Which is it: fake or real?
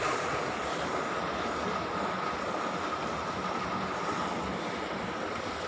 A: real